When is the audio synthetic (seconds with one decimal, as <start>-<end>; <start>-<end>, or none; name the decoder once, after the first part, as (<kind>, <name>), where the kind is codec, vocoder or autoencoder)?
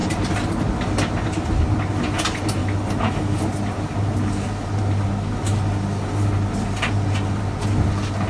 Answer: none